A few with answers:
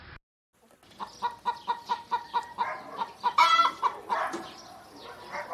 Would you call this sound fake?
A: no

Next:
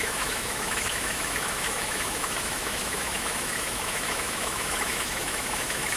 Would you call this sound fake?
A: yes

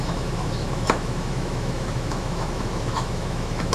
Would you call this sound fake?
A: yes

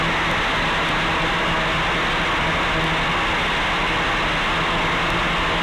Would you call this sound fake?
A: no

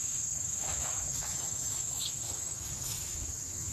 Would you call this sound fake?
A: yes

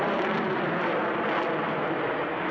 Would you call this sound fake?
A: no